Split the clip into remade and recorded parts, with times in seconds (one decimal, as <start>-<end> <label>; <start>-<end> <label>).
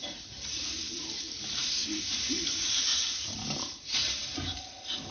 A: 0.0-2.2 remade; 2.2-2.9 recorded; 2.9-4.6 remade; 4.6-5.1 recorded